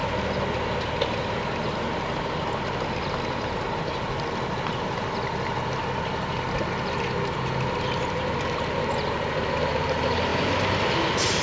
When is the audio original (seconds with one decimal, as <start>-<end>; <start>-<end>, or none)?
0.0-11.4